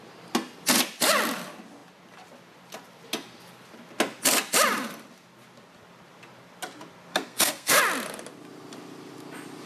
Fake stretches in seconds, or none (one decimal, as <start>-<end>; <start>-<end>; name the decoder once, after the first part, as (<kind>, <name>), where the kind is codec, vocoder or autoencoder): 7.1-7.8 (codec, SNAC)